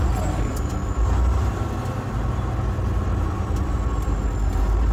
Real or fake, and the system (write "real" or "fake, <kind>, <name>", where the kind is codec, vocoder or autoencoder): real